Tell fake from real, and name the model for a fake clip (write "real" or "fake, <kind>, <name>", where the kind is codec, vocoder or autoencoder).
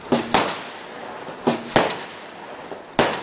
real